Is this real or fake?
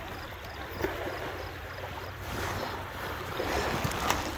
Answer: real